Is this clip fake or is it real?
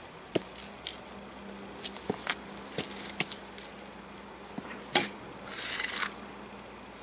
real